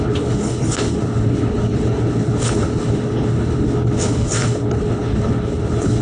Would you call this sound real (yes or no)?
no